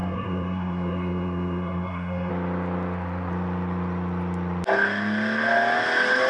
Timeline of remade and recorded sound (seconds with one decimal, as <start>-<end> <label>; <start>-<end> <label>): 0.0-2.3 remade; 2.3-6.3 recorded